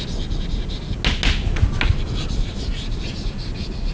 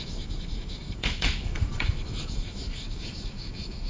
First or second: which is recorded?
first